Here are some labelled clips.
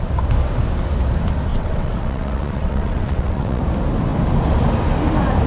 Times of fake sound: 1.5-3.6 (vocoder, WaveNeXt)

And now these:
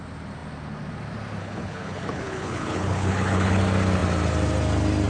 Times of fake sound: 1.4-3.6 (codec, HILCodec)